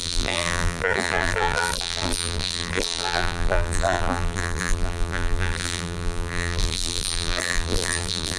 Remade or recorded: remade